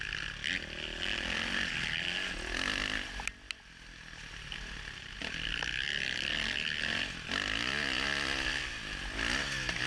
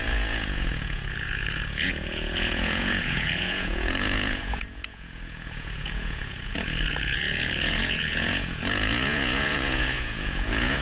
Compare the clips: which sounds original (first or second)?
first